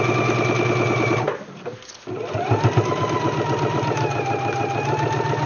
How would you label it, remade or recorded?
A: recorded